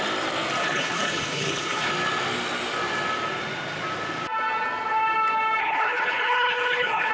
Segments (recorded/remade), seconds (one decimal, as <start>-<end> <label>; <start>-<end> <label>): 0.0-0.6 recorded; 0.6-1.9 remade; 1.9-5.6 recorded; 5.6-7.1 remade